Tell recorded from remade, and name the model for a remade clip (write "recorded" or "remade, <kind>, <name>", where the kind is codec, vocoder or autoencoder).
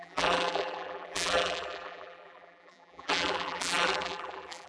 remade, vocoder, BigVGAN v2